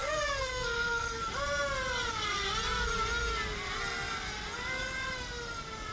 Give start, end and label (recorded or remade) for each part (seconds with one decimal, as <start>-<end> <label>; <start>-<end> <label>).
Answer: 0.0-1.3 remade; 1.3-5.9 recorded